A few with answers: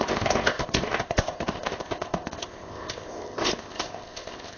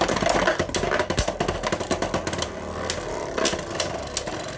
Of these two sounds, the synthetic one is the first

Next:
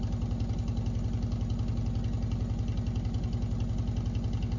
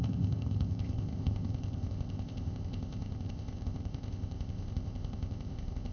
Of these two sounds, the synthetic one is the second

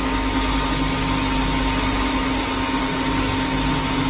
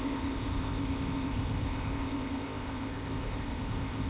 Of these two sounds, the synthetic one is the second